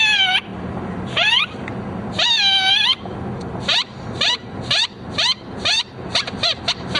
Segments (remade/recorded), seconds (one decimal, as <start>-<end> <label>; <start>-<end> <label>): 0.0-7.0 recorded